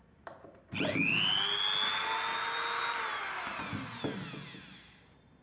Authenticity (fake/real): real